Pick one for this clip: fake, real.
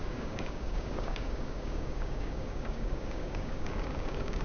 fake